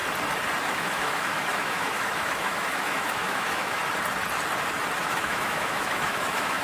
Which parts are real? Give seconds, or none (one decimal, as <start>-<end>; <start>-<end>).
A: 0.0-0.7; 3.8-5.0